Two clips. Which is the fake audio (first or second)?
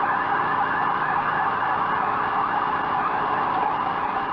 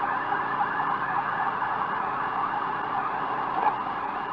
second